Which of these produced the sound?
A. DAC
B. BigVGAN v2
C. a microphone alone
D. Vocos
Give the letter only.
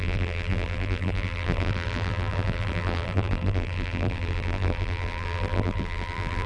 B